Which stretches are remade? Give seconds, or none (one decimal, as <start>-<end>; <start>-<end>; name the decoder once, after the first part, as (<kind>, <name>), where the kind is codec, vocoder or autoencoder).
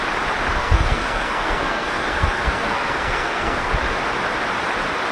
0.6-3.7 (codec, SNAC)